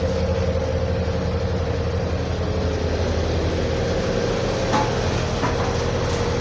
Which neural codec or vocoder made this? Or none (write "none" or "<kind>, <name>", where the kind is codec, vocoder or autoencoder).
none